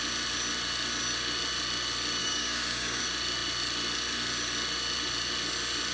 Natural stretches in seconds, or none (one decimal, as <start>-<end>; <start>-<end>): 0.0-2.2; 3.0-5.9